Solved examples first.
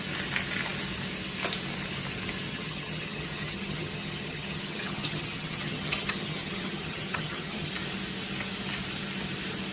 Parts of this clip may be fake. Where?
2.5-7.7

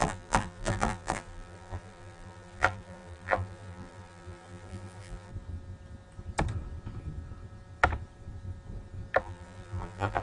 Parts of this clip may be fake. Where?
0.0-5.3; 9.2-10.2

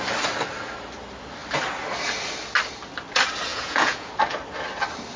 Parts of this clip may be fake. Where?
3.5-4.1

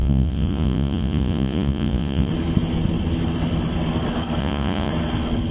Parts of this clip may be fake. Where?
0.0-2.3; 4.4-4.9